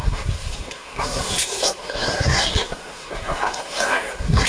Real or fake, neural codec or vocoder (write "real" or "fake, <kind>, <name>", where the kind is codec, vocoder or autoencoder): fake, codec, SNAC